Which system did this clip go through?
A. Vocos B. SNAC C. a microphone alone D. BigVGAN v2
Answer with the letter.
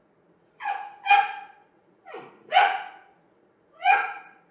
A